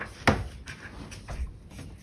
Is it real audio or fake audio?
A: real